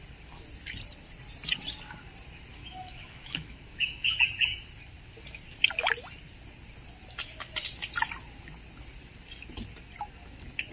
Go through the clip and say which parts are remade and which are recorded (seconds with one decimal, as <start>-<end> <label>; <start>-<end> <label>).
0.0-2.5 recorded; 2.5-4.2 remade; 4.2-10.7 recorded